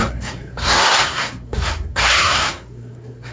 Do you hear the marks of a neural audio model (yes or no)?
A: yes